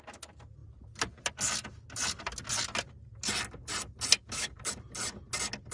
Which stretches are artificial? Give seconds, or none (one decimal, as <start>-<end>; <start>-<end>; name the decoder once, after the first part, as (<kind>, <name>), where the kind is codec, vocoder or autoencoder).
4.2-4.7 (autoencoder, DAC-VAE)